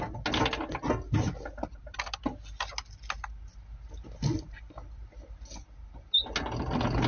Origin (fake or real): real